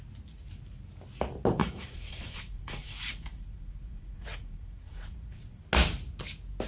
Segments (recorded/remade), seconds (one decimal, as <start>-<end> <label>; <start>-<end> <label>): 0.0-1.6 recorded; 1.6-5.6 remade; 5.6-6.7 recorded